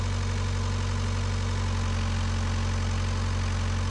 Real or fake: real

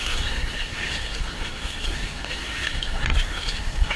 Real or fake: fake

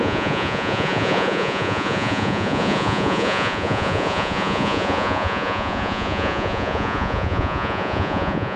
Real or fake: fake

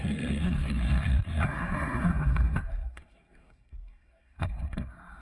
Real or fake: fake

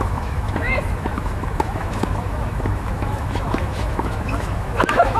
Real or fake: fake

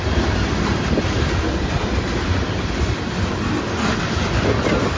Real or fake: real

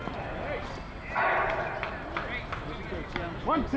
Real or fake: real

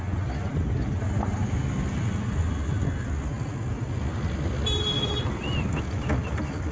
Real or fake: real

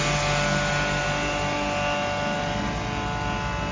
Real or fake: real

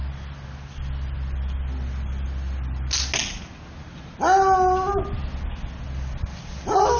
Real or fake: real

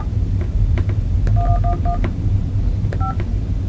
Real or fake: real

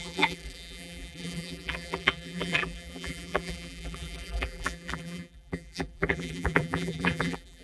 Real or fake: fake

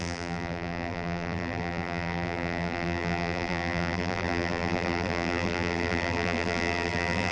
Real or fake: fake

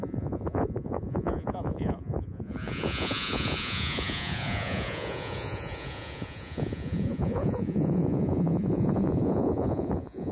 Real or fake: fake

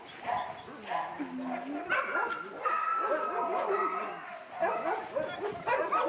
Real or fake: real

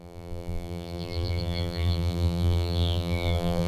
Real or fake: fake